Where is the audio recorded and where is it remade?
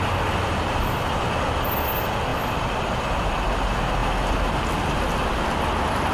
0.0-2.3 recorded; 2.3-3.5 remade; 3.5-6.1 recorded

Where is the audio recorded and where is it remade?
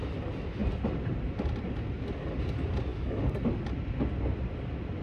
0.0-2.9 recorded; 2.9-3.4 remade; 3.4-5.0 recorded